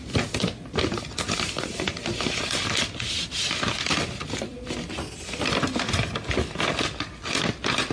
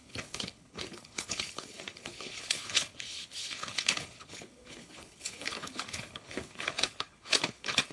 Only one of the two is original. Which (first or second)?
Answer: first